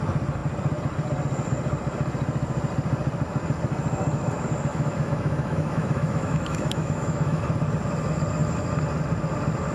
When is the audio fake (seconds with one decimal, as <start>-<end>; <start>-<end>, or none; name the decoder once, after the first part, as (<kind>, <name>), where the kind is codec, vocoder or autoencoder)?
4.7-7.4 (autoencoder, DAC-VAE)

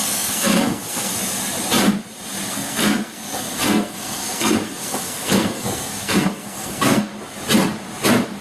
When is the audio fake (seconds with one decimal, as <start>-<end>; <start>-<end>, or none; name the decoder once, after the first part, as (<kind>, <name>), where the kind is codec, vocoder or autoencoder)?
0.0-1.1 (codec, SNAC); 2.5-7.1

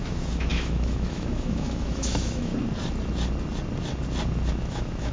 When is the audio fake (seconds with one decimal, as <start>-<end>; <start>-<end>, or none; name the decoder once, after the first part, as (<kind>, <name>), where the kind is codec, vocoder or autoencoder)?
0.0-2.5 (autoencoder, DAC-VAE); 4.5-5.1

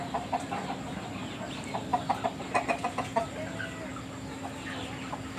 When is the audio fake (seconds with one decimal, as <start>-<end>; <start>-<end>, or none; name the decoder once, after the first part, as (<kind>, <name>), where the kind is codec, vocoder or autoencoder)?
1.9-2.9 (vocoder, BigVGAN v2); 3.9-4.4

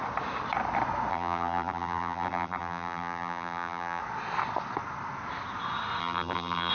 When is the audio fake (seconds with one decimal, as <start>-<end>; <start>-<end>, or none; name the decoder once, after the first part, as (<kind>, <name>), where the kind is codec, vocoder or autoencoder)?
1.1-4.0 (vocoder, BigVGAN v2); 6.0-6.7

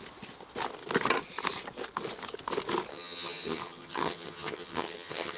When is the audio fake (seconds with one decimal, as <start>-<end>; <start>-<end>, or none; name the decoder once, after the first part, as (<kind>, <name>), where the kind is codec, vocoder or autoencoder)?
2.9-5.4 (vocoder, HiFi-GAN)